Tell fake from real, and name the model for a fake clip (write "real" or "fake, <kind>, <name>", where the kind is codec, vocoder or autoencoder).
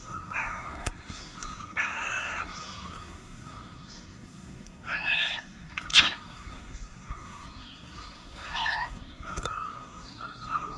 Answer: fake, codec, SNAC